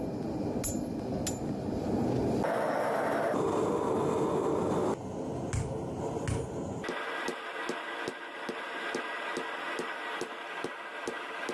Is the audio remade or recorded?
recorded